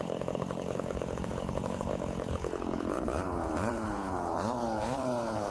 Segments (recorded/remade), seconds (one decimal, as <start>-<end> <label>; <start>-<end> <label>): 0.0-5.5 remade